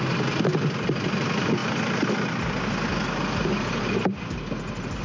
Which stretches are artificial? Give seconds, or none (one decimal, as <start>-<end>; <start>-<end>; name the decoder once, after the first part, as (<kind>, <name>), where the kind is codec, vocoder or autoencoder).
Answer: none